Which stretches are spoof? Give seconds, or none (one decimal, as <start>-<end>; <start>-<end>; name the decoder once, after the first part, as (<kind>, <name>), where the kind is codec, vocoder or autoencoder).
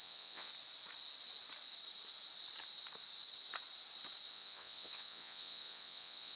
0.0-0.5 (vocoder, WaveNeXt); 4.3-6.4